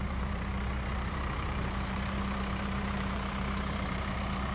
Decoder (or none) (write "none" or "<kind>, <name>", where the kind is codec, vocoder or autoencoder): vocoder, BigVGAN v2